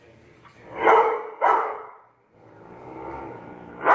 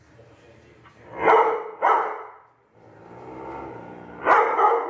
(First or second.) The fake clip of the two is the first